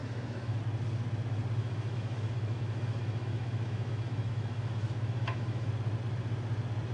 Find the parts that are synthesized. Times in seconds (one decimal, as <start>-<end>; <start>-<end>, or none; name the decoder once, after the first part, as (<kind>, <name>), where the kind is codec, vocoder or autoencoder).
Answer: 0.0-0.6 (autoencoder, DAC-VAE); 1.6-5.7